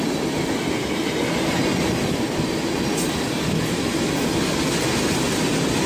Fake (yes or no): no